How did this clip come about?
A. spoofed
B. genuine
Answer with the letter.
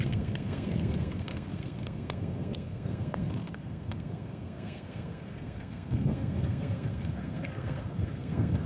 A